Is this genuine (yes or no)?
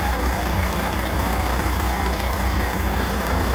no